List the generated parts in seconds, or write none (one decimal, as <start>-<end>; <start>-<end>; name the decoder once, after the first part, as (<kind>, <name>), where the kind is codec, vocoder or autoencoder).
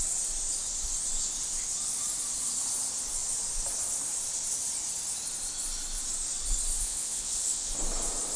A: 6.8-7.7 (vocoder, Vocos)